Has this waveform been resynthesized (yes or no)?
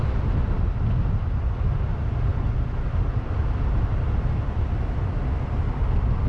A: no